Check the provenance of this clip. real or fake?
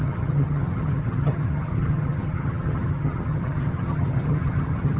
fake